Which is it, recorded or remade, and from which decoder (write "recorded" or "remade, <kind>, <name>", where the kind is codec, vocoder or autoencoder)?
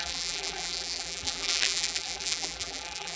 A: remade, vocoder, BigVGAN v2